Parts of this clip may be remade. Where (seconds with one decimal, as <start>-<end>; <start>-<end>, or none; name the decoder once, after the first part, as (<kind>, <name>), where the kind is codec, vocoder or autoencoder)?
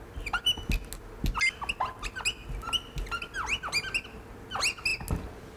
none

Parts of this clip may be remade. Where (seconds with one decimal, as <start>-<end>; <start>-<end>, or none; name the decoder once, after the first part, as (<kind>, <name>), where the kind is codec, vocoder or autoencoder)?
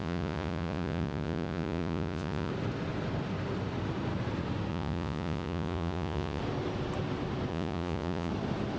0.0-2.5 (vocoder, Vocos); 4.7-6.4; 7.5-8.3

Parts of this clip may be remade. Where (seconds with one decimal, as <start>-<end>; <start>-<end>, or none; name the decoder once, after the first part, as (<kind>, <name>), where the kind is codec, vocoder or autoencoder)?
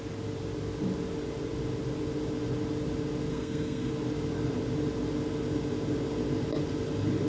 3.3-3.9 (codec, SNAC)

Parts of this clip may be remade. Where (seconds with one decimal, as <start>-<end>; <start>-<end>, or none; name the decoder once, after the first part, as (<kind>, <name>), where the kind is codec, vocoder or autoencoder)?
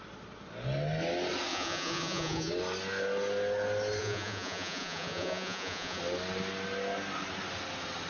1.5-2.5 (vocoder, Vocos); 4.0-6.0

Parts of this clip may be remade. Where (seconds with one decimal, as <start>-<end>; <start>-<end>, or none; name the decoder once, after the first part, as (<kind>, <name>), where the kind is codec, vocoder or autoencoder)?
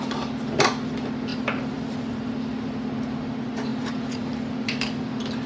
1.3-2.3 (vocoder, BigVGAN v2); 3.7-4.5